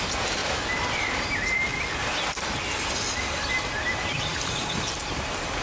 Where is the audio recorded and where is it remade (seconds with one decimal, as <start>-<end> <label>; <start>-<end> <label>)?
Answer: 0.0-0.4 remade; 0.4-1.2 recorded; 1.2-1.7 remade; 1.7-3.9 recorded; 3.9-5.6 remade